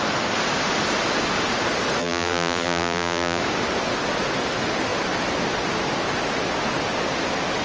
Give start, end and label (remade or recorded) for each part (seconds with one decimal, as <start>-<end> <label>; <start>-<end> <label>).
0.0-2.0 recorded; 2.0-3.4 remade; 3.4-7.6 recorded